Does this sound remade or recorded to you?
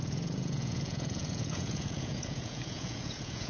remade